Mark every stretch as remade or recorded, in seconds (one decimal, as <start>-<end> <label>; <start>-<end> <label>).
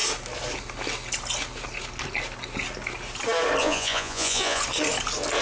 0.0-3.6 recorded; 3.6-4.6 remade; 4.6-5.4 recorded